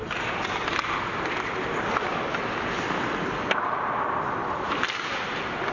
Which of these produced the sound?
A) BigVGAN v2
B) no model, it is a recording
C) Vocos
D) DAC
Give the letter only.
B